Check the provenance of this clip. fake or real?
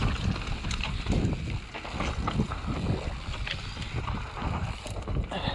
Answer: real